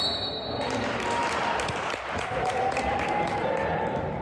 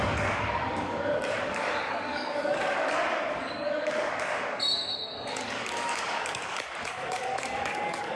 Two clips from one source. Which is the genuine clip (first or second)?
first